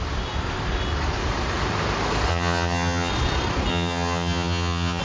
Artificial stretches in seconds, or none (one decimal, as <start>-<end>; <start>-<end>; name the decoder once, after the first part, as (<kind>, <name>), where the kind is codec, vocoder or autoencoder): 2.3-3.1 (vocoder, HiFi-GAN); 3.7-5.0

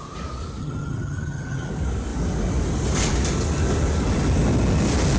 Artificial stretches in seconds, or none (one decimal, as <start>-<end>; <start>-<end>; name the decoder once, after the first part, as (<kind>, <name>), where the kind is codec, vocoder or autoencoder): 0.6-1.7 (vocoder, HiFi-GAN)

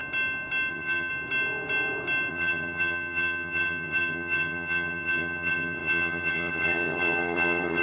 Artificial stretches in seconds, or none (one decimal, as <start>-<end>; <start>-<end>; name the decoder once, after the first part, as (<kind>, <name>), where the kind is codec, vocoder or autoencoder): 0.7-1.1 (vocoder, HiFi-GAN); 2.3-7.8

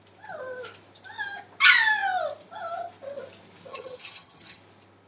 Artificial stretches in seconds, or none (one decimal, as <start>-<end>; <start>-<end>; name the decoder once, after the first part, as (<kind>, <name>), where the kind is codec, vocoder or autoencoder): 3.7-4.6 (vocoder, HiFi-GAN)

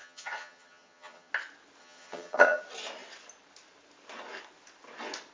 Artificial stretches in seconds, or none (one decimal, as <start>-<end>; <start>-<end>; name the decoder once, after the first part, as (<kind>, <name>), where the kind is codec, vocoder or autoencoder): 0.0-1.3 (vocoder, HiFi-GAN); 1.8-2.6

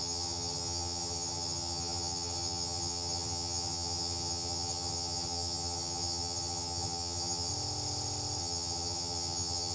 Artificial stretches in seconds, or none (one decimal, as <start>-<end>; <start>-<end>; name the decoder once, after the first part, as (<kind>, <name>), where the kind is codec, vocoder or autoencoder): 0.0-7.5 (vocoder, HiFi-GAN); 8.4-9.7